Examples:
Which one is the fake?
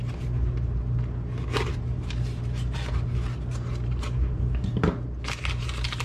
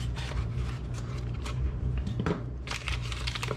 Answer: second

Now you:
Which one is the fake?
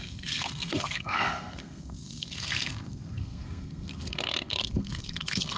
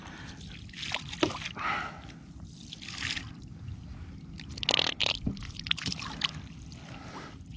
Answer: first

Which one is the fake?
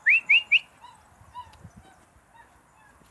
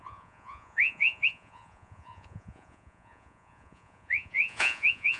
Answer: second